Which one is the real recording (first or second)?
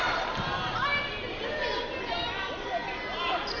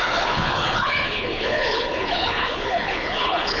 first